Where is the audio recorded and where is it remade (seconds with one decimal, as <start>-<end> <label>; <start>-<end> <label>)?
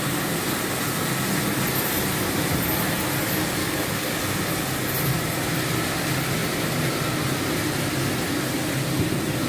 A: 0.0-3.6 recorded; 3.6-4.2 remade; 4.2-9.5 recorded